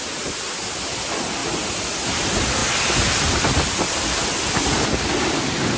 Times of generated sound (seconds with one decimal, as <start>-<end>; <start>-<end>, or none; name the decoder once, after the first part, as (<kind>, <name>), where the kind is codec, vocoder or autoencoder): none